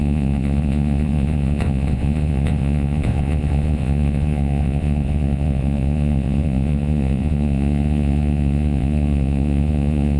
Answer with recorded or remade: remade